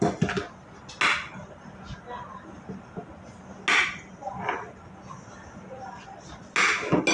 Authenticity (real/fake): real